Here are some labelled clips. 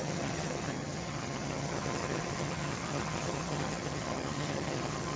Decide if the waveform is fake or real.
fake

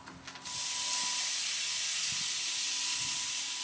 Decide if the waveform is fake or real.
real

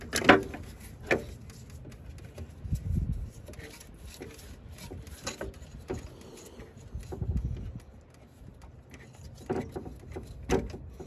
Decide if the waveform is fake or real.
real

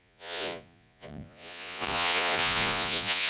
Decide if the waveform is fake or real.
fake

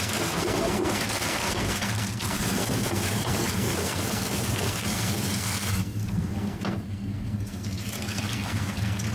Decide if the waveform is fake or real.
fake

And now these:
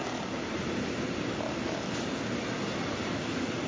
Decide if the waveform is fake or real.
real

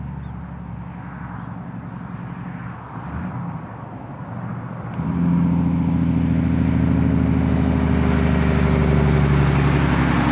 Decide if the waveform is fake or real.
real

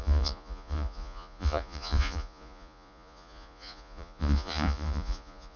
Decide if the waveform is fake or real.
fake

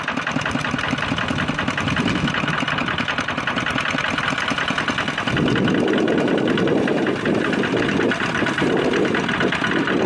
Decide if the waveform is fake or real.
real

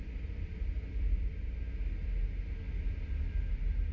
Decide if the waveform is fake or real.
real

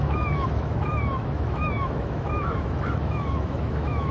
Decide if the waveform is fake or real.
fake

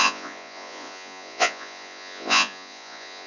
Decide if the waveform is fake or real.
fake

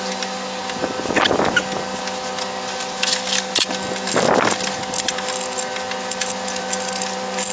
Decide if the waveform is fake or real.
real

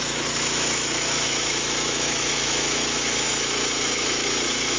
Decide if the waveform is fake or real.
fake